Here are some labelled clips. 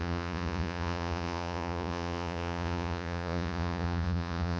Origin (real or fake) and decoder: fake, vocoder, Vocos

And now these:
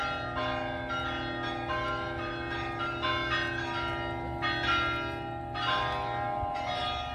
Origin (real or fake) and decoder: real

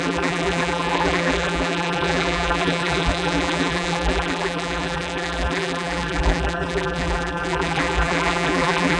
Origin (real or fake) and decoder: fake, vocoder, BigVGAN v2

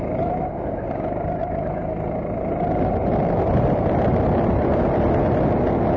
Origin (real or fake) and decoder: real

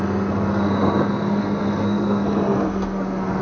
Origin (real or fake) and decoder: fake, codec, SNAC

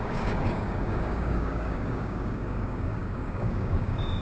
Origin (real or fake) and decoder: fake, codec, DAC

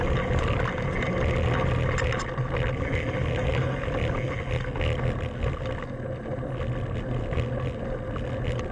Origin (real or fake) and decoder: real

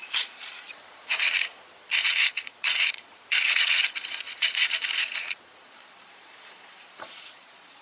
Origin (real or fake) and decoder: fake, vocoder, Vocos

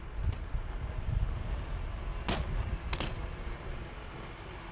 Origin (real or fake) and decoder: real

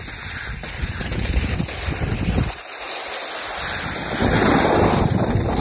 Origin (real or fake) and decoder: real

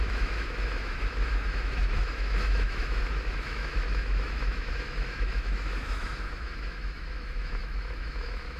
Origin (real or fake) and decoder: fake, autoencoder, DAC-VAE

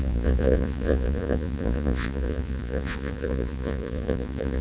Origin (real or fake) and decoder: fake, vocoder, Vocos